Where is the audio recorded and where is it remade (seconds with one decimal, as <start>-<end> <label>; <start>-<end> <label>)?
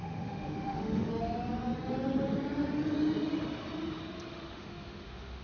0.0-1.1 remade; 1.1-4.3 recorded; 4.3-5.4 remade